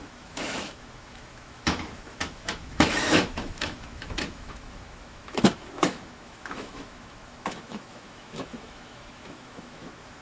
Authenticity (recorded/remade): remade